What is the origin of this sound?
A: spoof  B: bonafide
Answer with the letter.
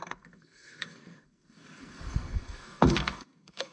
A